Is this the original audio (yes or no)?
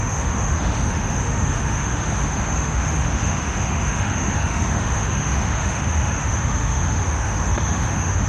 no